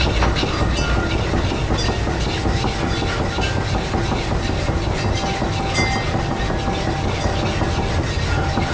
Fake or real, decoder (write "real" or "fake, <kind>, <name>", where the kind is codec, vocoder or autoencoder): real